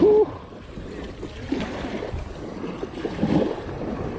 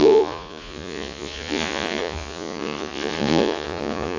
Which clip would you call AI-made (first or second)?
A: second